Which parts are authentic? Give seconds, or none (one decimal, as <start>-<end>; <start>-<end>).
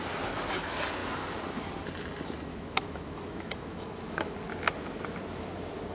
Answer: 0.0-2.5; 4.3-5.9